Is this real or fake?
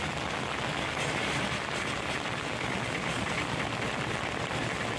real